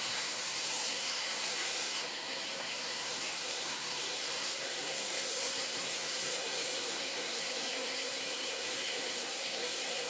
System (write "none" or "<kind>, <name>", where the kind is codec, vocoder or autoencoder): codec, SNAC